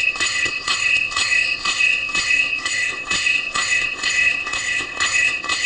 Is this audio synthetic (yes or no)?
yes